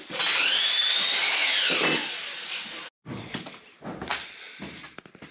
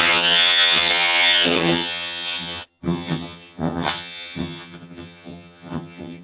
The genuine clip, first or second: first